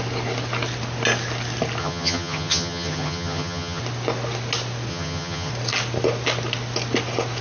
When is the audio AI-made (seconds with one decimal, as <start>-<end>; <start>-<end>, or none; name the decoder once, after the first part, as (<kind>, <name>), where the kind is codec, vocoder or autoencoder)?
1.8-3.8 (vocoder, HiFi-GAN); 4.9-5.5